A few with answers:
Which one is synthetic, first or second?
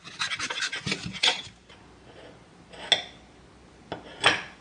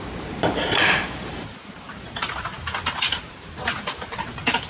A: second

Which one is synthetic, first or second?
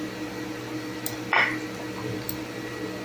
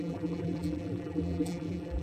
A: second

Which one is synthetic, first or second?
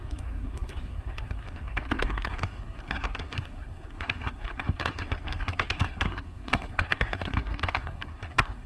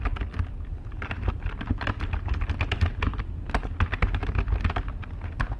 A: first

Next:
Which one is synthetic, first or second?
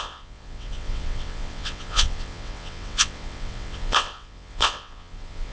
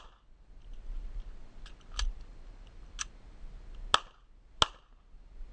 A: first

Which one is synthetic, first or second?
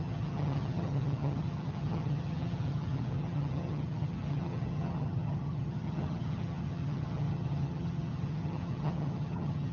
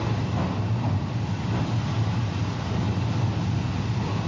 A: first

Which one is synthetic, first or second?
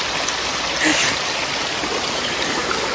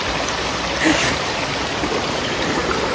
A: second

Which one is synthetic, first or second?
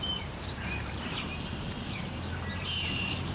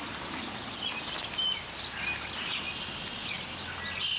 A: first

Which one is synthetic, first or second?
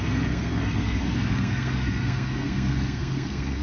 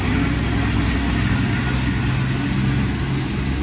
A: first